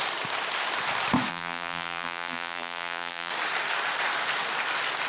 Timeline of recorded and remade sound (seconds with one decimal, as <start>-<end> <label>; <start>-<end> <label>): 0.0-1.3 recorded; 1.3-3.3 remade; 3.3-5.1 recorded